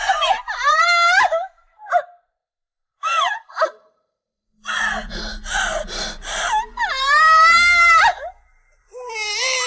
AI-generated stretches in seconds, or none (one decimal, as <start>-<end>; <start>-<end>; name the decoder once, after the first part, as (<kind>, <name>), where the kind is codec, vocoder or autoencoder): 0.0-2.4 (vocoder, BigVGAN v2); 3.5-4.5; 5.8-8.1; 8.8-9.7